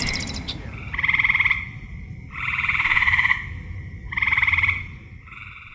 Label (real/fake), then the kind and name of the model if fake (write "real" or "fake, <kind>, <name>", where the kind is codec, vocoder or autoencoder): fake, vocoder, BigVGAN v2